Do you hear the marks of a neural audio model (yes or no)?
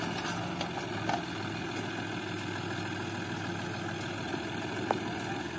no